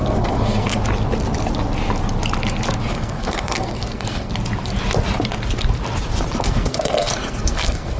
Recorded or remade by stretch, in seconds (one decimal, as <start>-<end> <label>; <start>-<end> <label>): 0.0-0.8 remade; 0.8-2.9 recorded; 2.9-4.3 remade; 4.3-6.4 recorded; 6.4-8.0 remade